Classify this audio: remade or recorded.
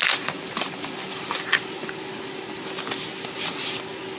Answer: recorded